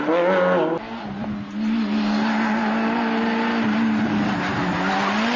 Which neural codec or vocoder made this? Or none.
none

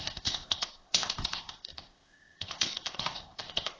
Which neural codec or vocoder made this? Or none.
codec, ZipCodec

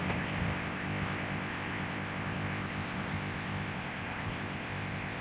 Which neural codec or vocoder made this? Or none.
codec, ZipCodec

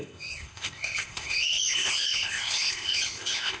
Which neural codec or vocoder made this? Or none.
codec, ZipCodec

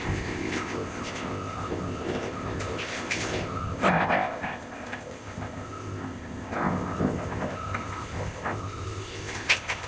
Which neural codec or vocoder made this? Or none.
codec, ZipCodec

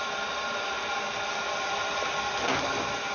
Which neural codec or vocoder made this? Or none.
none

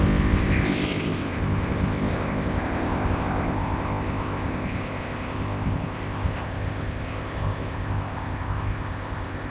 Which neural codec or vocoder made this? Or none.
codec, ZipCodec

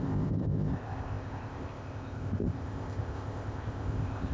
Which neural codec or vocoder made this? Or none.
codec, ZipCodec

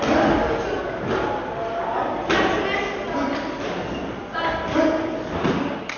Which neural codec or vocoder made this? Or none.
none